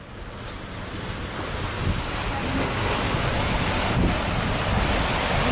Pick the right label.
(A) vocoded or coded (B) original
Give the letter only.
B